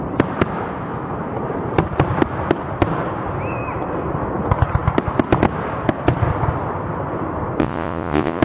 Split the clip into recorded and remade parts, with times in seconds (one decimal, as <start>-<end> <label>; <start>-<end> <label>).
0.0-7.6 recorded; 7.6-8.4 remade